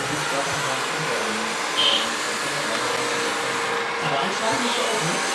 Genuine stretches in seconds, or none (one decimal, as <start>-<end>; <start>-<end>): 0.0-5.3